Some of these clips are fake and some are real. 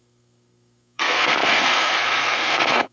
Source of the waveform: fake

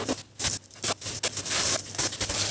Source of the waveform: real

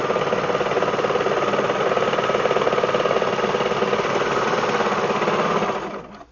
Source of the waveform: real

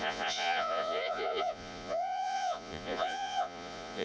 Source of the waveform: fake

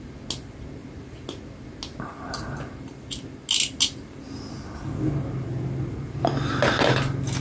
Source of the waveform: real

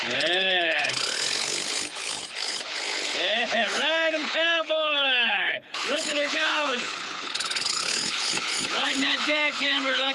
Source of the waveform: fake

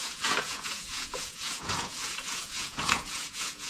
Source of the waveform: fake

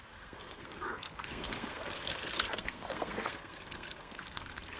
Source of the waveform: fake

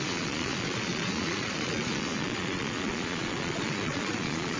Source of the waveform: fake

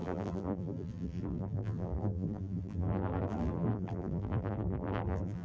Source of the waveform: fake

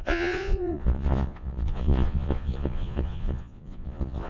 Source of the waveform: fake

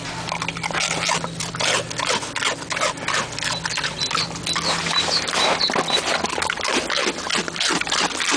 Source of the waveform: real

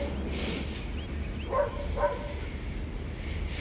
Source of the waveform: real